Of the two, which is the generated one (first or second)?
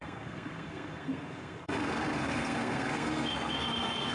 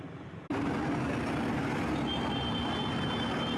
first